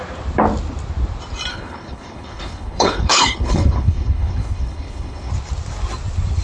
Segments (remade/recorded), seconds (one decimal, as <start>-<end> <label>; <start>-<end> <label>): 0.0-1.5 recorded; 1.5-5.3 remade; 5.3-6.4 recorded